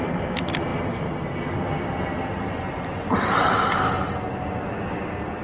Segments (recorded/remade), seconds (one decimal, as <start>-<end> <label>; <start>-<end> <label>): 0.0-0.7 recorded; 0.7-3.9 remade; 3.9-5.4 recorded